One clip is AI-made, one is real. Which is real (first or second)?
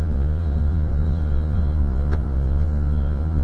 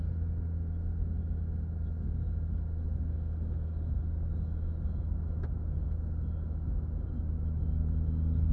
second